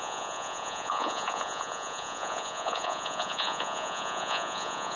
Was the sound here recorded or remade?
remade